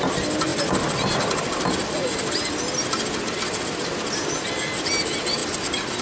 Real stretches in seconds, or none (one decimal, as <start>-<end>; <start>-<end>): 0.0-6.0